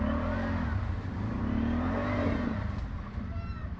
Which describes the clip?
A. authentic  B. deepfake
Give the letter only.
A